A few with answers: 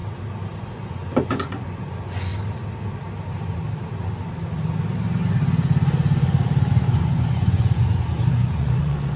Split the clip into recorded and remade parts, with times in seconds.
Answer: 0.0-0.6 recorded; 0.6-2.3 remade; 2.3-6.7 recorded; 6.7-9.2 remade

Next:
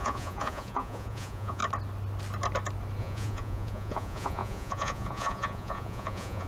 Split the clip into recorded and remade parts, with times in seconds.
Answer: 0.0-1.6 remade; 1.6-3.0 recorded; 3.0-6.5 remade

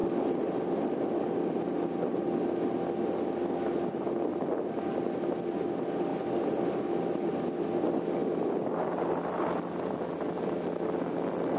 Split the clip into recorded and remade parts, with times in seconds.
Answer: 0.0-11.6 recorded

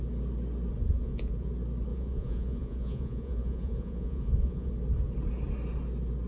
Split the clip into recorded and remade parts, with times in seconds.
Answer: 0.0-0.8 recorded; 0.8-1.5 remade; 1.5-1.9 recorded; 1.9-4.7 remade; 4.7-6.3 recorded

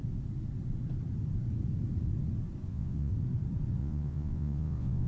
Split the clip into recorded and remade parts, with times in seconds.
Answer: 0.0-2.7 recorded; 2.7-3.1 remade; 3.1-3.8 recorded; 3.8-5.1 remade

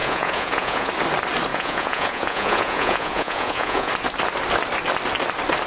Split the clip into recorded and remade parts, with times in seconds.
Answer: 0.0-0.9 remade; 0.9-1.5 recorded; 1.5-3.9 remade; 3.9-5.7 recorded

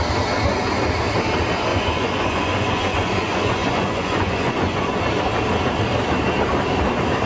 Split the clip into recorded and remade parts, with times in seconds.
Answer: 0.0-1.7 recorded; 1.7-5.0 remade; 5.0-7.3 recorded